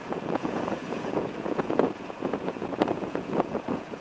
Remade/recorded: remade